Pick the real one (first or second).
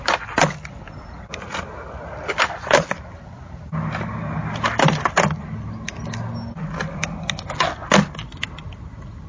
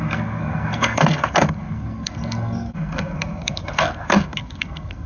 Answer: first